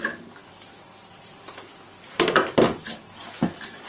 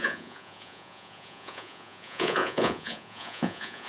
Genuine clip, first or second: first